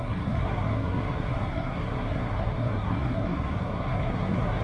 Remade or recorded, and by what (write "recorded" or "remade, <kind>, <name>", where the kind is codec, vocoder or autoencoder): remade, codec, SNAC